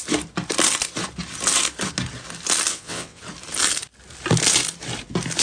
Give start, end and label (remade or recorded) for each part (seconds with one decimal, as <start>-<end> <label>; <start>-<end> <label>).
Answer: 0.0-2.7 recorded; 2.7-3.2 remade; 3.2-5.4 recorded